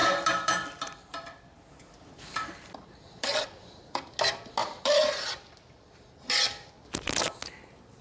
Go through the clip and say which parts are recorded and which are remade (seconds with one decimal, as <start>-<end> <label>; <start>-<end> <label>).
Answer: 0.0-4.1 remade; 4.1-4.6 recorded; 4.6-7.2 remade; 7.2-8.0 recorded